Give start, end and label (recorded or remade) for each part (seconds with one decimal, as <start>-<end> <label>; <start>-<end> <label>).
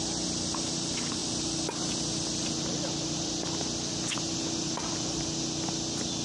0.0-6.2 recorded